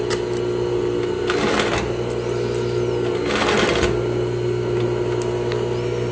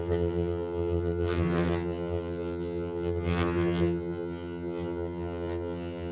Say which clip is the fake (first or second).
second